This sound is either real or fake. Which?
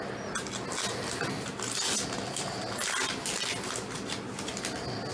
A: real